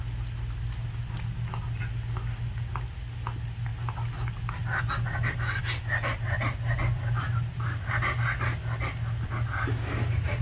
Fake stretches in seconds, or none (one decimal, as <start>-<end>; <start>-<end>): none